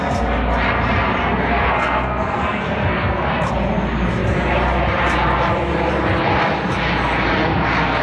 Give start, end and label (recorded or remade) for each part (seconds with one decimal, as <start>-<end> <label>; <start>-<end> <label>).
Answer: 0.0-1.2 recorded; 1.2-3.5 remade; 3.5-8.0 recorded